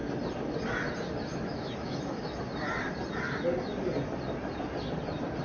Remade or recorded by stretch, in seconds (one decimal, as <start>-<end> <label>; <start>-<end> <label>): 0.0-1.3 recorded; 1.3-2.4 remade; 2.4-5.4 recorded